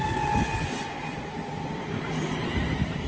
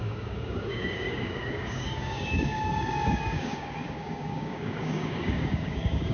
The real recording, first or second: first